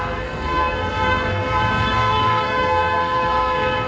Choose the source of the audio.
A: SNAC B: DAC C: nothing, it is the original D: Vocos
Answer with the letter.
A